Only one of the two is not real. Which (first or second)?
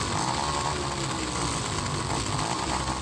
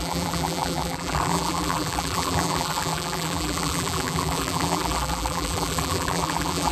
second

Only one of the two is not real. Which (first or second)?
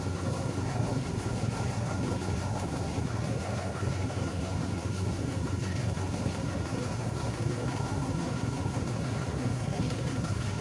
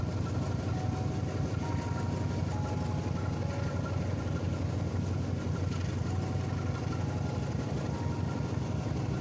first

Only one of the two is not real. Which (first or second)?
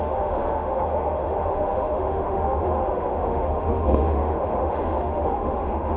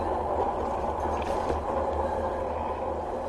first